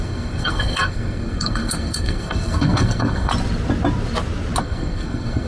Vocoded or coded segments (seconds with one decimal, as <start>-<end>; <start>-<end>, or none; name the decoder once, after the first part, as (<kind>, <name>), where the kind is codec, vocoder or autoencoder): 0.0-3.3 (codec, SNAC); 4.6-5.5